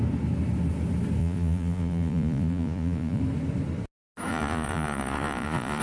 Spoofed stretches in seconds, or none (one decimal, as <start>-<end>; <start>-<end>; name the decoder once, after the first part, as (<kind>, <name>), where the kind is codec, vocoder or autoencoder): 1.2-3.2 (vocoder, Vocos); 4.3-5.8